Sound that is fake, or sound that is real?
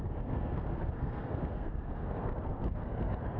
fake